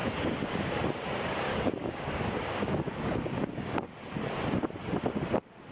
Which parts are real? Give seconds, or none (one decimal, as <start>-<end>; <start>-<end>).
0.6-1.5; 3.9-5.7